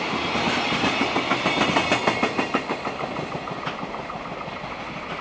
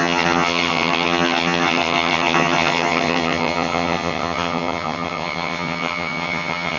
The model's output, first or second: second